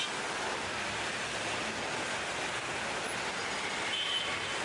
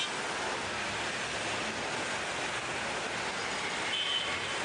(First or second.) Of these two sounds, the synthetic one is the first